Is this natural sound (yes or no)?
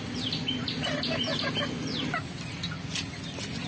yes